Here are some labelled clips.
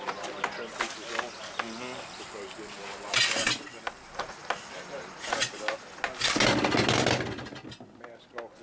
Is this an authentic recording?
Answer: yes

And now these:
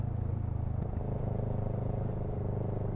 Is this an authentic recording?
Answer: yes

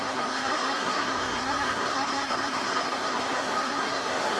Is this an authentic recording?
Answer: no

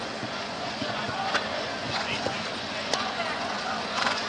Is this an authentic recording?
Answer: no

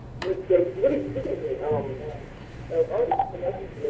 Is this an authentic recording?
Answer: no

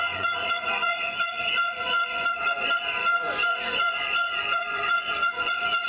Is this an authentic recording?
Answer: no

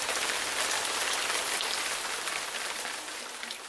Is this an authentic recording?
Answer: yes